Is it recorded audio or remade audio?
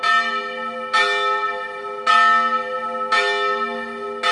recorded